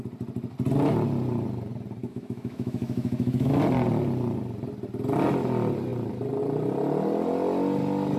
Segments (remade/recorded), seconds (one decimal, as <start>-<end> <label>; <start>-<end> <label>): 0.0-2.0 recorded; 2.0-3.6 remade; 3.6-8.2 recorded